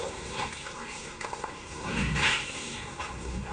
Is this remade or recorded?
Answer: remade